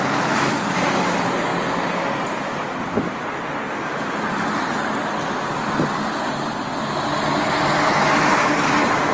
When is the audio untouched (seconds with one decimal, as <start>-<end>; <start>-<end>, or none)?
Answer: 0.0-9.1